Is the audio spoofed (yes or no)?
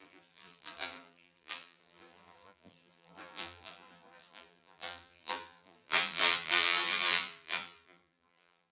yes